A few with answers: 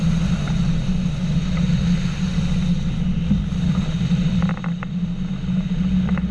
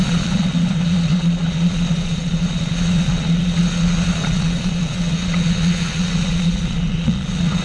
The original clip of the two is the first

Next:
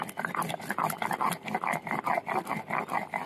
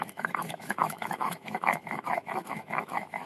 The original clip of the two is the first